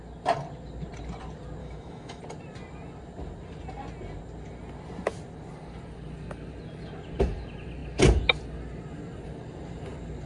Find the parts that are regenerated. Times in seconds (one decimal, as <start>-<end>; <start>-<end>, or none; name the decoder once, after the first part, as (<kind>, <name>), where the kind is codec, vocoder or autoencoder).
1.6-2.2 (autoencoder, DAC-VAE)